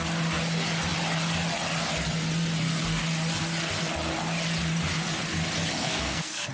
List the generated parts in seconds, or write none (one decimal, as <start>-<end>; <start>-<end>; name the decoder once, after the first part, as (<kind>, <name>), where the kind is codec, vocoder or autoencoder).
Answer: 5.8-6.5 (codec, SNAC)